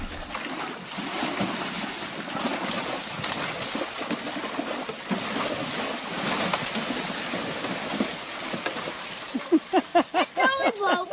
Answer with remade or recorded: recorded